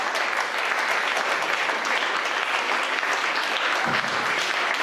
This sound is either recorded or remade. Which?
recorded